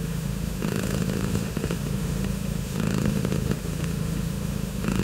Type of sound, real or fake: fake